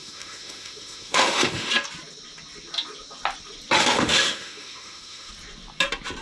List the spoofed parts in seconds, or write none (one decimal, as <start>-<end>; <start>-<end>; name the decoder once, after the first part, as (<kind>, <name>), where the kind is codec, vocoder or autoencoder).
0.0-1.7 (autoencoder, DAC-VAE); 3.8-5.3